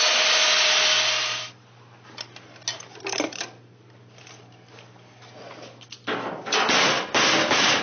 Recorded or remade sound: recorded